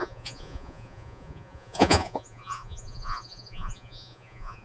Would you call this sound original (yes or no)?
no